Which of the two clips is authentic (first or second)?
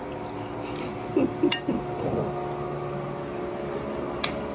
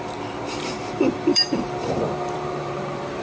first